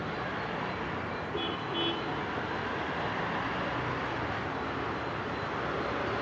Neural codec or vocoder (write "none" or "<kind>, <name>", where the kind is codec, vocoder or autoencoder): none